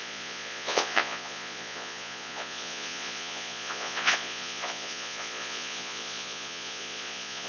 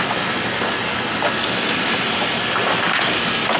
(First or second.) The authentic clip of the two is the second